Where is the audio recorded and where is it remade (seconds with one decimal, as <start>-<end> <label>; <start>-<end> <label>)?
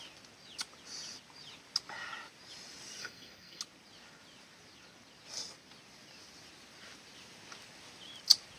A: 0.0-3.0 recorded; 3.0-3.6 remade; 3.6-8.6 recorded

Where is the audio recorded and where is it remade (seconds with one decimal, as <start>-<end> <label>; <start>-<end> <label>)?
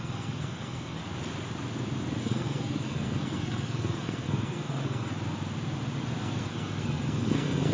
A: 0.0-1.0 remade; 1.0-2.2 recorded; 2.2-5.1 remade; 5.1-6.2 recorded; 6.2-7.7 remade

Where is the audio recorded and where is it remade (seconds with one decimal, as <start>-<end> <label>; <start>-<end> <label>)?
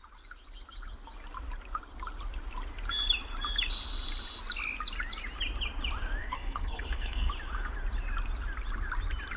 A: 0.0-6.2 recorded; 6.2-7.3 remade; 7.3-9.4 recorded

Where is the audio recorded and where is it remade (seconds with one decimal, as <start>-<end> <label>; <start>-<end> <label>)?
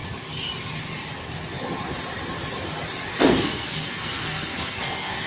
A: 0.0-3.1 recorded; 3.1-5.3 remade